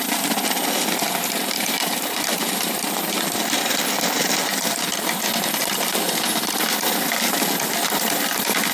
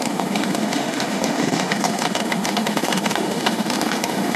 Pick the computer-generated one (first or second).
second